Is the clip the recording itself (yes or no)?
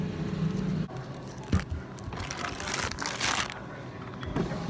yes